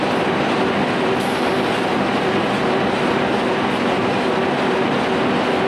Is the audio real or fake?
real